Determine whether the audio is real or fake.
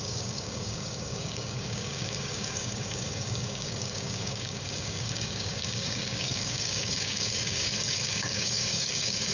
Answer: fake